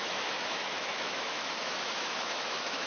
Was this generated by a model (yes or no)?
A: yes